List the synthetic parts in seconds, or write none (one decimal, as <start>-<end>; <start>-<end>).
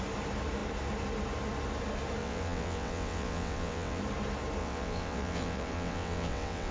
2.2-4.0; 4.6-6.7